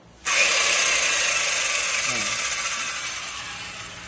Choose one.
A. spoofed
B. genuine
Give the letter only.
B